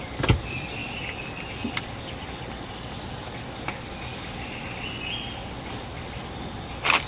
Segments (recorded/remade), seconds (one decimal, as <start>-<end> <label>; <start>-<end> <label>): 0.0-7.1 recorded